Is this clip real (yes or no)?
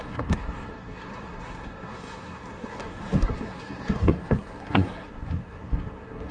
no